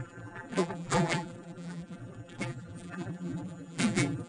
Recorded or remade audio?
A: remade